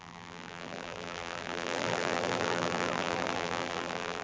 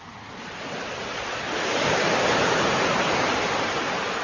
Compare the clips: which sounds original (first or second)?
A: second